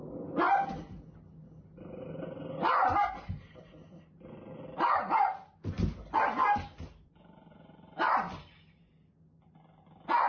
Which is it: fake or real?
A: real